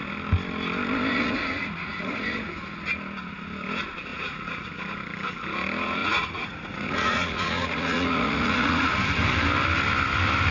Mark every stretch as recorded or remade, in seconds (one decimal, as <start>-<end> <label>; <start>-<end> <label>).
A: 0.0-1.1 recorded; 1.1-2.5 remade; 2.5-4.1 recorded; 4.1-4.7 remade; 4.7-6.0 recorded; 6.0-8.9 remade; 8.9-10.5 recorded